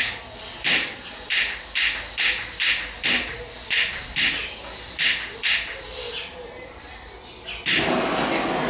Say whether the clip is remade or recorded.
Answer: recorded